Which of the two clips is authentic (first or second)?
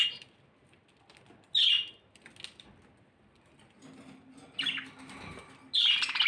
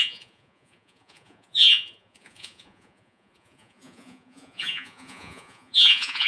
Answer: first